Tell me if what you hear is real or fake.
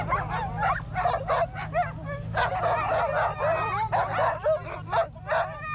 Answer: real